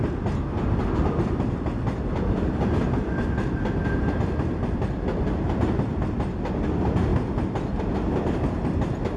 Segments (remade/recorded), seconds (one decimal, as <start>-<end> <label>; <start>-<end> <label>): 0.0-9.2 recorded